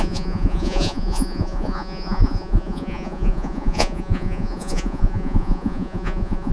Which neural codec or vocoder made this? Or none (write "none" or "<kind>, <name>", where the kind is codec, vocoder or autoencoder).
vocoder, Vocos